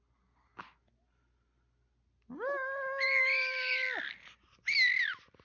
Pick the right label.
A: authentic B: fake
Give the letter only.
A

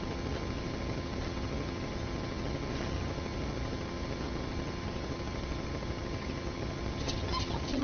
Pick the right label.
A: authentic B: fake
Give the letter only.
B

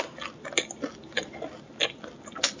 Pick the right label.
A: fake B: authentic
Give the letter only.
B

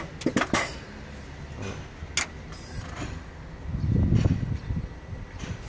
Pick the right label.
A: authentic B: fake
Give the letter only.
A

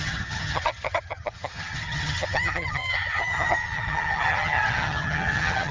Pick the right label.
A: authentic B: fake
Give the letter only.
B